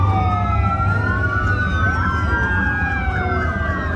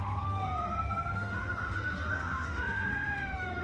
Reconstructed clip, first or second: second